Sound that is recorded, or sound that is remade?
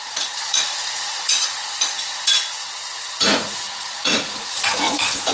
remade